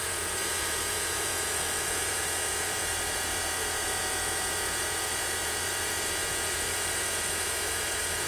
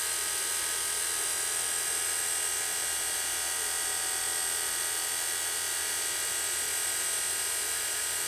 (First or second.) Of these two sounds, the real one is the second